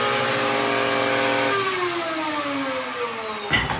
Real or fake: real